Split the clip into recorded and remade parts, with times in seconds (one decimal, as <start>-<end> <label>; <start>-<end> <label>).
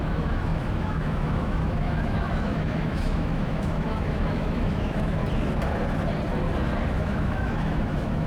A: 0.0-5.2 remade; 5.2-6.9 recorded; 6.9-8.3 remade